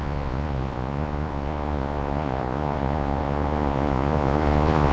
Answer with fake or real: fake